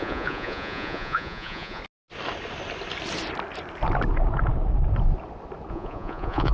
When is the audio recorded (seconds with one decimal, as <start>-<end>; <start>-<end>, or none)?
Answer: 1.8-5.7